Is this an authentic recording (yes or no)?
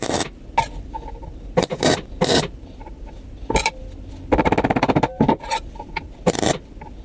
yes